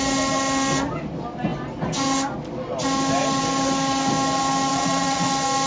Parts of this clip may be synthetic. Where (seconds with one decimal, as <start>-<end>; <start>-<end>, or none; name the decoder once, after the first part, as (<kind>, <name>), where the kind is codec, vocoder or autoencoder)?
4.7-5.3 (vocoder, WaveNeXt)